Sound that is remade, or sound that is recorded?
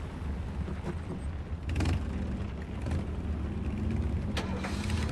recorded